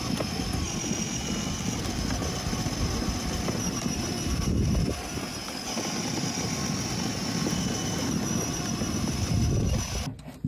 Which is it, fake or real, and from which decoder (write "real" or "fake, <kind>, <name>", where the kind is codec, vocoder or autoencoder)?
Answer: real